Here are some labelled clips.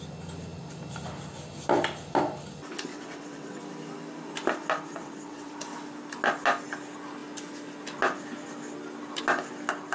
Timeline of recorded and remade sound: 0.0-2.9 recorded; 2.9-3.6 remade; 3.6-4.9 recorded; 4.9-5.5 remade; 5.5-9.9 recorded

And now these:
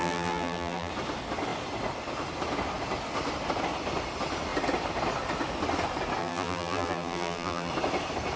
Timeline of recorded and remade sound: 0.0-0.9 remade; 0.9-6.2 recorded; 6.2-7.7 remade; 7.7-8.4 recorded

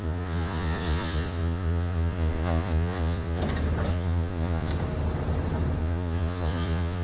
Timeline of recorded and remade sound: 0.0-3.4 remade; 3.4-3.9 recorded; 3.9-4.7 remade; 4.7-5.8 recorded; 5.8-7.0 remade

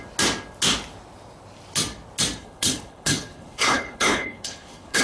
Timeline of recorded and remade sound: 0.0-2.4 recorded; 2.4-5.0 remade